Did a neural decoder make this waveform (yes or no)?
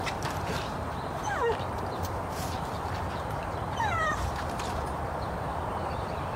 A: yes